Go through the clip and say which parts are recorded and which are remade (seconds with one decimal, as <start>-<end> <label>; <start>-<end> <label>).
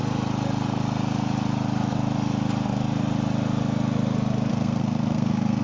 0.0-4.5 recorded; 4.5-5.6 remade